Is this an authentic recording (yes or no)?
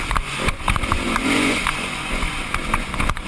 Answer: no